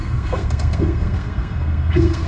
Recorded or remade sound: remade